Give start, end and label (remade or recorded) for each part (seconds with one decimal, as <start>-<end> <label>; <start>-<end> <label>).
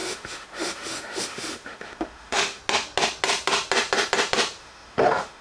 0.0-2.6 remade; 2.6-4.6 recorded; 4.6-5.4 remade